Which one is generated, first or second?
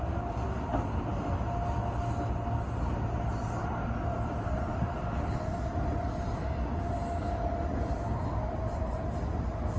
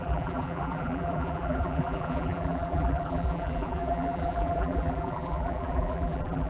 second